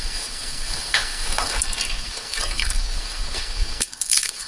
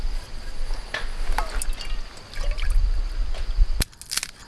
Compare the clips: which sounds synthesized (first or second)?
first